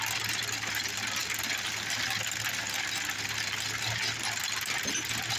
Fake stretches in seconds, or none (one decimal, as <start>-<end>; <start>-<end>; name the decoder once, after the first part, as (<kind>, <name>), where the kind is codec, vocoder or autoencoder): none